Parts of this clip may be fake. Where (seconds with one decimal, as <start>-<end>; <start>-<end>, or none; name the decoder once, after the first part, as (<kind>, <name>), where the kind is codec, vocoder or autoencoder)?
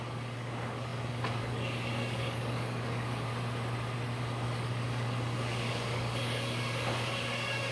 0.0-3.3 (codec, DAC); 4.2-7.7